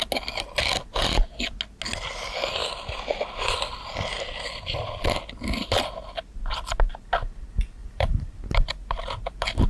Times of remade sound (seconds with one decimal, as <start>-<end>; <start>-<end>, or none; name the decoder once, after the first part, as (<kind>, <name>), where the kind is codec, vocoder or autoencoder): 7.8-8.3 (vocoder, BigVGAN v2)

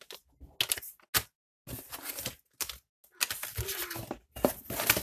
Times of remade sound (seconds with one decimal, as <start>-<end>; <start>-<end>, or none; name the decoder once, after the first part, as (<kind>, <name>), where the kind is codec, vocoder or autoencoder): 3.5-4.1 (vocoder, BigVGAN v2)

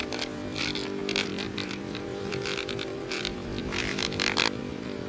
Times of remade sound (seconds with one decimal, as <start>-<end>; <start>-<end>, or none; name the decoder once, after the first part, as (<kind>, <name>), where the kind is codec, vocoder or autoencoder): 1.3-4.2 (vocoder, BigVGAN v2)